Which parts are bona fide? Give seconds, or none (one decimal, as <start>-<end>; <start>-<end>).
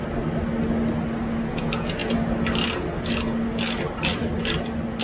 0.0-5.0